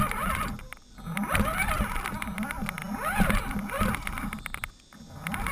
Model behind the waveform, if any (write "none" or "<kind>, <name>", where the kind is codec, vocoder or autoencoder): none